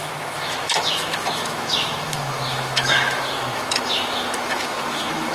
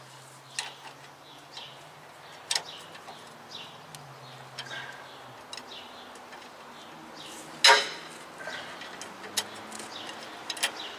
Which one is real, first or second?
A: second